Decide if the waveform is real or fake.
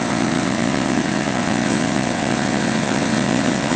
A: fake